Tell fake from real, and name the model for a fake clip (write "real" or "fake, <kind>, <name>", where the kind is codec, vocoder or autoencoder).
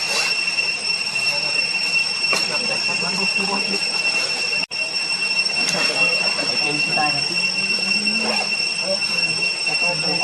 real